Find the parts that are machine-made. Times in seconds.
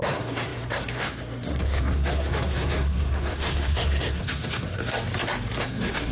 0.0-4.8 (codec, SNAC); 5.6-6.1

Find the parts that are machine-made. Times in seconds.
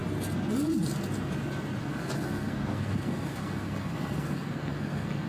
1.8-5.3 (codec, SNAC)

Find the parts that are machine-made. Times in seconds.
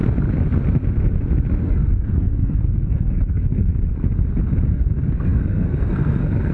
1.6-3.7 (codec, SNAC); 4.7-6.5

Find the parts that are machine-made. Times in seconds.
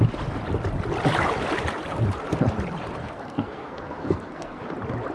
3.0-4.6 (codec, SNAC)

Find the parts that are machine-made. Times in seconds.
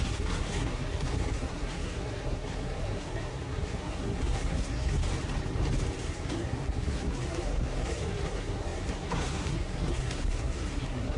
0.0-5.0 (codec, SNAC); 6.0-11.2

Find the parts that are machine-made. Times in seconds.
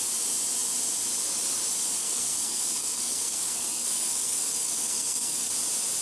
2.0-5.5 (codec, SNAC)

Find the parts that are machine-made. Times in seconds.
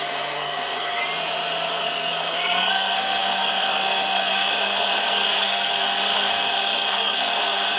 0.0-1.0 (codec, SNAC); 1.7-7.8